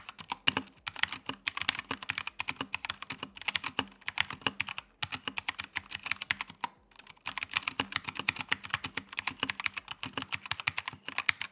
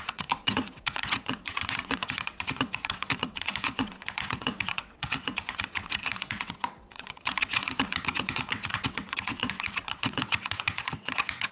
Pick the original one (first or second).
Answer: first